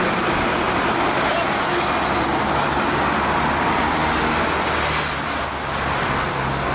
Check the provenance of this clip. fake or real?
real